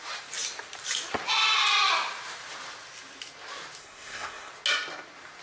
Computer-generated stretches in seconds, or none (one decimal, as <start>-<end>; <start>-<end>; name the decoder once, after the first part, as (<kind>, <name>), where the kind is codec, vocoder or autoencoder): 3.8-4.5 (codec, SNAC)